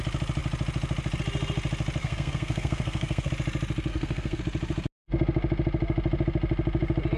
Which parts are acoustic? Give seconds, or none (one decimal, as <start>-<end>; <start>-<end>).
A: 0.0-2.0; 3.3-3.9; 4.4-7.2